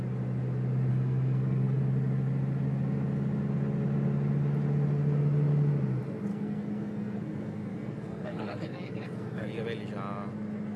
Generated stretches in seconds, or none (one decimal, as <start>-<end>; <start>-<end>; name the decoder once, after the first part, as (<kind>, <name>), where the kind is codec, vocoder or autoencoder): 0.9-1.8 (codec, SNAC); 6.3-9.5